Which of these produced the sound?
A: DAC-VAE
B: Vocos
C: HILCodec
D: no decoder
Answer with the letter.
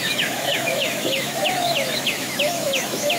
A